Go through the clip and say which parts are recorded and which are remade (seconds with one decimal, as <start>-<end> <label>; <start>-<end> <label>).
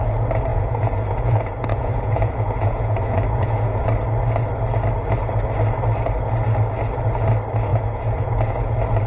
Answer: 0.0-0.5 recorded; 0.5-3.8 remade; 3.8-7.7 recorded; 7.7-8.7 remade; 8.7-9.1 recorded